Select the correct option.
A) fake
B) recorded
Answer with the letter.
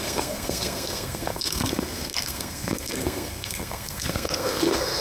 A